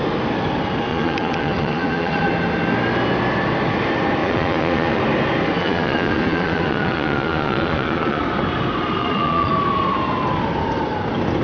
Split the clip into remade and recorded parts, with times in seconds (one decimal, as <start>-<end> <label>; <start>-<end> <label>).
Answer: 0.0-0.9 recorded; 0.9-2.3 remade; 2.3-4.2 recorded; 4.2-5.0 remade; 5.0-5.6 recorded; 5.6-8.2 remade; 8.2-9.0 recorded; 9.0-9.5 remade; 9.5-11.4 recorded